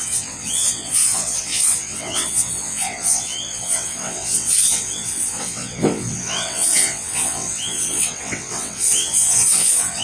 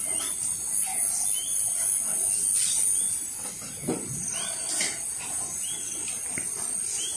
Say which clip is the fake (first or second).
first